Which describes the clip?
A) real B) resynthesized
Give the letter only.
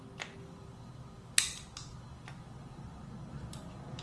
A